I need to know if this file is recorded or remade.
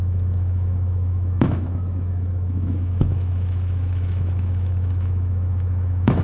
remade